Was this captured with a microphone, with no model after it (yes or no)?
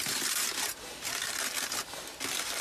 yes